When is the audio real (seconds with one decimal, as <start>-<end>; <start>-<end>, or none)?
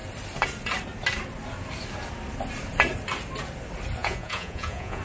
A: 0.0-4.0